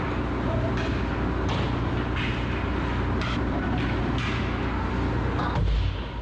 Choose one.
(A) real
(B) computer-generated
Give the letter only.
A